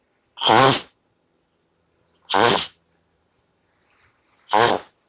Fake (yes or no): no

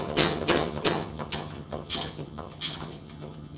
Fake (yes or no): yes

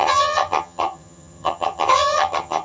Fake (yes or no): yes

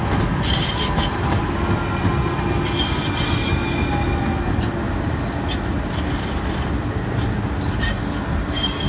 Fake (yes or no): no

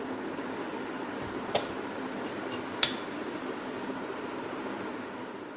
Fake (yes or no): no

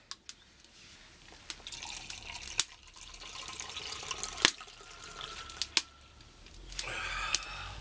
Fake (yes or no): no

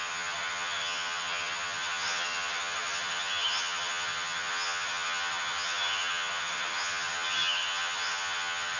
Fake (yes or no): yes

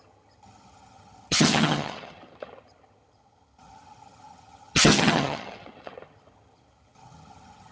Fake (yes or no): yes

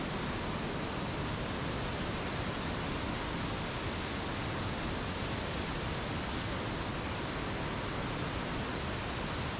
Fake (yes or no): no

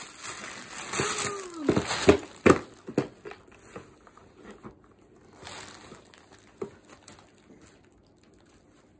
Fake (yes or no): no